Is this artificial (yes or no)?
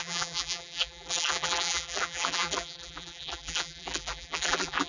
yes